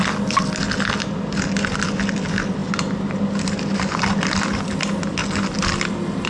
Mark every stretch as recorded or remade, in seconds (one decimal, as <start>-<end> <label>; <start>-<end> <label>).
0.0-6.3 recorded

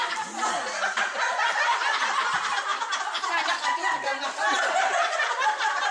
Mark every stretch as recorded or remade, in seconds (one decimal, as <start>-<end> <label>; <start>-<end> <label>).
0.0-5.9 recorded

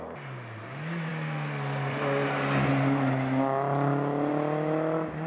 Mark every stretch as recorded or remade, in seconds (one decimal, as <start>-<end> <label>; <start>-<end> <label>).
0.0-5.3 recorded